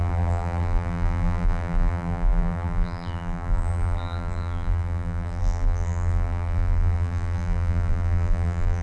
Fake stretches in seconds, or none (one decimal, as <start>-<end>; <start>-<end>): 0.0-8.8